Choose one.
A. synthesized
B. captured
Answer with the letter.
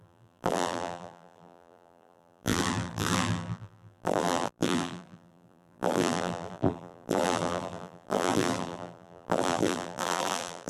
A